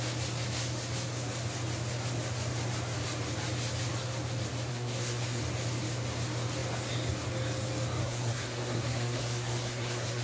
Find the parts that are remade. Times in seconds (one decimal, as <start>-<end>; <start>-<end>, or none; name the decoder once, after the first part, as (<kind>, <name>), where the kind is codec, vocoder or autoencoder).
4.7-5.4 (codec, SNAC); 8.0-10.2